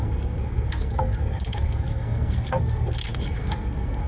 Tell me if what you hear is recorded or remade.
remade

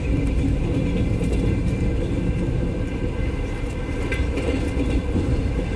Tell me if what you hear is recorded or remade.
recorded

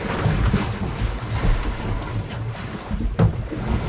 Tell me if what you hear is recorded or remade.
recorded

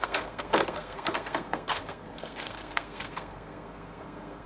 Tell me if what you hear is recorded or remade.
remade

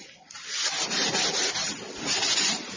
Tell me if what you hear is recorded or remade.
recorded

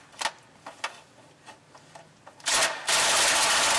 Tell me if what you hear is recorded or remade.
recorded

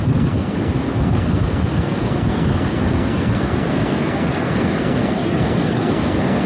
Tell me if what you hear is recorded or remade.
remade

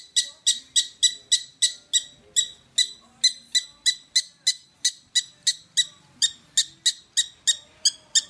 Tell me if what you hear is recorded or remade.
recorded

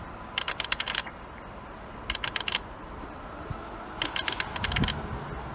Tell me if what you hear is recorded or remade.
recorded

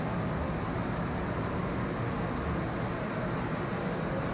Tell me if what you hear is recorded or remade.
recorded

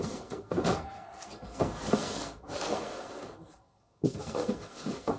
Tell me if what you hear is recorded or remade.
remade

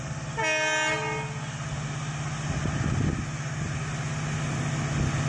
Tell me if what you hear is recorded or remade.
recorded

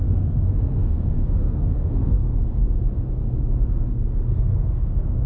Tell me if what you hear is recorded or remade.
remade